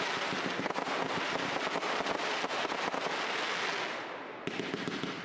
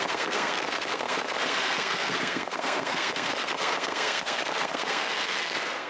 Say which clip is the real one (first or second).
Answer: first